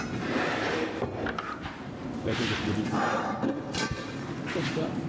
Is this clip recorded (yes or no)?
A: no